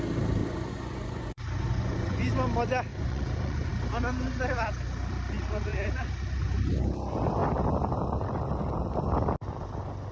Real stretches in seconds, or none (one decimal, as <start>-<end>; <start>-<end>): 0.0-0.4; 2.3-2.9; 3.7-10.1